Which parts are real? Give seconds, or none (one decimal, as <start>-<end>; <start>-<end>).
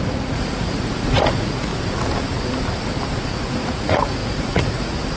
1.7-3.5